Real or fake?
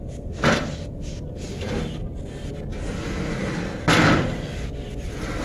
real